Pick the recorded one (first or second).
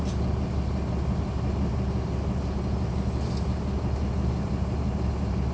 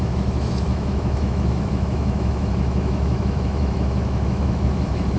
first